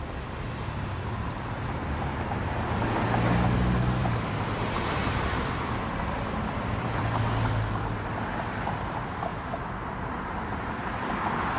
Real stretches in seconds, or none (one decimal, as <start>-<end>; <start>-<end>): 0.0-4.0; 7.2-9.3; 10.4-11.6